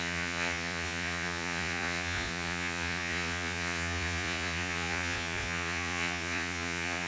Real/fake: fake